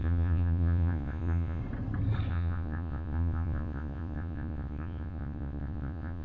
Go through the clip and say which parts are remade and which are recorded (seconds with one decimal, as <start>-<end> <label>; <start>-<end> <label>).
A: 0.0-1.6 remade; 1.6-2.3 recorded; 2.3-6.2 remade